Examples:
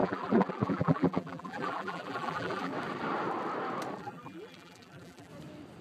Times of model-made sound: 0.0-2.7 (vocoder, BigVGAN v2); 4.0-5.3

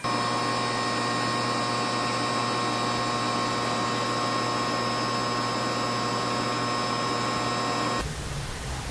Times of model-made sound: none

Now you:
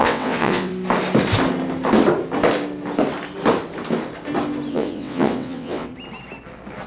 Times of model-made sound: 0.0-0.7 (vocoder, WaveNeXt); 4.7-5.9

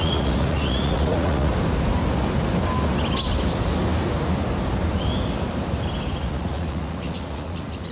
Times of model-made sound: 0.0-1.5 (vocoder, Vocos); 6.2-7.9

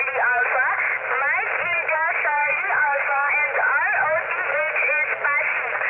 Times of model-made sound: 2.4-3.3 (codec, DAC)

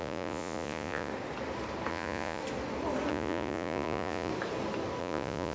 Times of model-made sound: 0.0-1.1 (vocoder, Vocos); 1.9-2.4; 3.1-4.3; 5.0-5.5

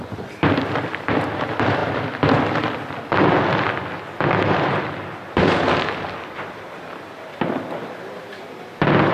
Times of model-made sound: none

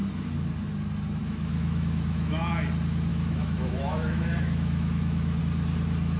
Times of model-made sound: 1.2-2.4 (autoencoder, DAC-VAE); 3.1-5.4